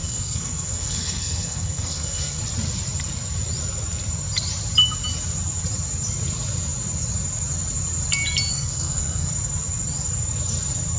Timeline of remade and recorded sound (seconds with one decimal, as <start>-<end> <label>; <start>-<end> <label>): 0.0-2.4 remade; 2.4-8.5 recorded; 8.5-9.3 remade; 9.3-11.0 recorded